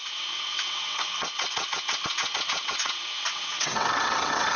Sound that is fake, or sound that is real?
fake